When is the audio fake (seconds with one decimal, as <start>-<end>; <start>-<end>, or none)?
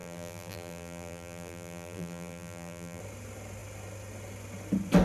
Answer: 0.0-3.0